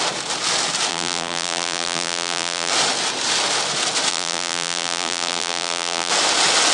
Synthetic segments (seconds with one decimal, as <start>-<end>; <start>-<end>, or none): 0.9-2.7; 4.1-6.1